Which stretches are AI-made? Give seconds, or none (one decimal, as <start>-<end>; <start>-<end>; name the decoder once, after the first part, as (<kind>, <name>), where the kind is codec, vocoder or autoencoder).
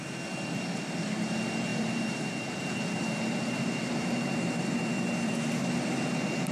1.7-5.3 (vocoder, BigVGAN v2)